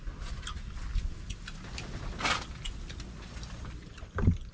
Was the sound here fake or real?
real